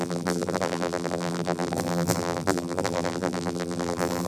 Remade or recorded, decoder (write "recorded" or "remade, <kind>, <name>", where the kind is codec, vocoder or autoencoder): remade, vocoder, BigVGAN v2